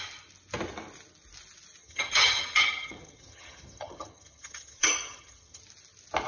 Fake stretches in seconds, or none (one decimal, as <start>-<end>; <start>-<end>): 1.8-5.6